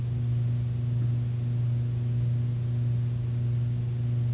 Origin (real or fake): real